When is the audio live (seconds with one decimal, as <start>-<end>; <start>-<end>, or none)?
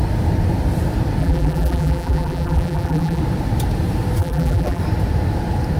0.0-1.2; 3.2-4.2; 4.8-5.8